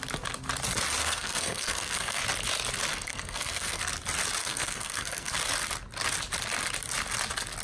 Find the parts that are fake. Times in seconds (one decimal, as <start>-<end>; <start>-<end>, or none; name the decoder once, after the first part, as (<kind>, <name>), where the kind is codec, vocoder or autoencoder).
1.0-2.2 (codec, SNAC); 2.9-3.8; 4.4-5.3

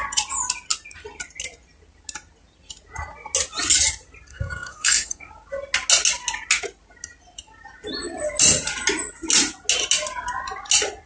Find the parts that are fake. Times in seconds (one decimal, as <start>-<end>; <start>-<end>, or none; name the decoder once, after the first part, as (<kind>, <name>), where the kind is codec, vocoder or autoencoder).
4.3-5.3 (codec, SNAC)

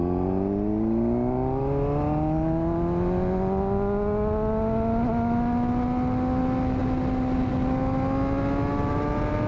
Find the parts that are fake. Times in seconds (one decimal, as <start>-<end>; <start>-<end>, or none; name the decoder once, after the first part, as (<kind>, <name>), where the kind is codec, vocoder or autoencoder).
none

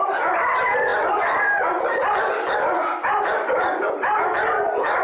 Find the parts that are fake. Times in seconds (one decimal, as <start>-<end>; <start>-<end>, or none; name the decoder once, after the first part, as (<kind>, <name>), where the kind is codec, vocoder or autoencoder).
none

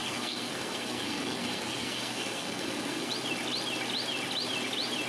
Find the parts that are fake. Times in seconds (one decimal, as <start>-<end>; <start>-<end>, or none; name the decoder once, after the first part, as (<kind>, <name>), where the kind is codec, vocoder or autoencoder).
0.0-3.1 (codec, SNAC)

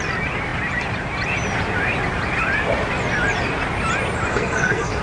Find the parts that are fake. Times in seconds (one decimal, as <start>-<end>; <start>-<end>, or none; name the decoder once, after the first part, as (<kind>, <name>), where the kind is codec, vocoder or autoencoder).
4.3-5.0 (codec, SNAC)